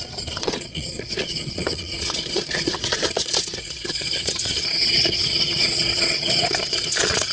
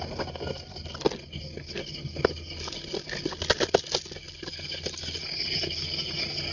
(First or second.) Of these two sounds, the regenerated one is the first